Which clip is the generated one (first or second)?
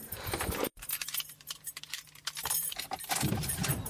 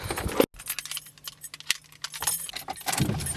first